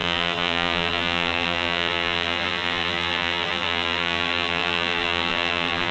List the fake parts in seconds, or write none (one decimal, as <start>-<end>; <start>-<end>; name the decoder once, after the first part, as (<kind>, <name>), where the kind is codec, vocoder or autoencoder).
0.0-5.9 (vocoder, BigVGAN v2)